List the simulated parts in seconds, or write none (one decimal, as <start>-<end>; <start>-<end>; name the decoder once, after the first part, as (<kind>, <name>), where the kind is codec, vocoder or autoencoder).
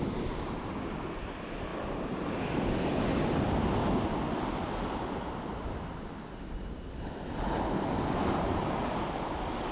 none